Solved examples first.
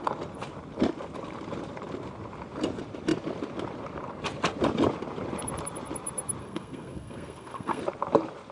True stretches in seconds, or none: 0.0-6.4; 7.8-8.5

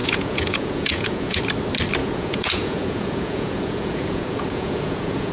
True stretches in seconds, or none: 1.4-2.0

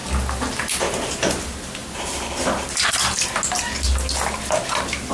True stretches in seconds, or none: 0.0-5.1

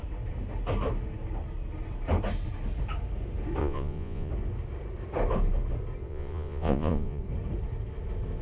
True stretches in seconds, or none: 0.0-3.6; 4.3-6.1; 7.2-8.4

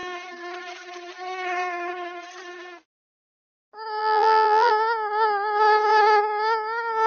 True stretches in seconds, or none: 0.0-4.0; 4.7-7.1

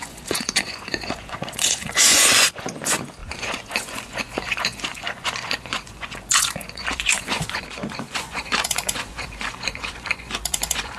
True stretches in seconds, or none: none

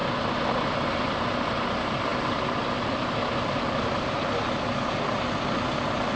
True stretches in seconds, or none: 0.0-6.2